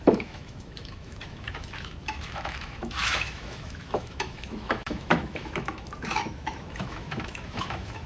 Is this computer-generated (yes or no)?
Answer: yes